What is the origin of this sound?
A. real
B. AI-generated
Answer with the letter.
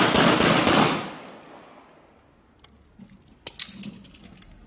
A